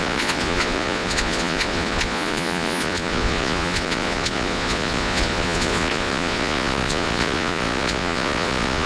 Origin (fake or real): fake